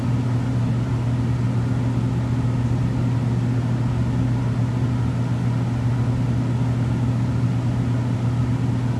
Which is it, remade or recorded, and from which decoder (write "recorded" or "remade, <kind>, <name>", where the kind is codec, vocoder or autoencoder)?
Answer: recorded